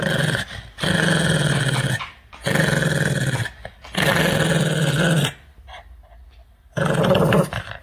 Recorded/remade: recorded